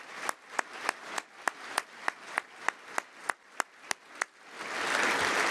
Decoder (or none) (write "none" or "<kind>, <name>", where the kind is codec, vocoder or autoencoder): none